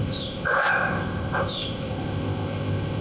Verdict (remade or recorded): remade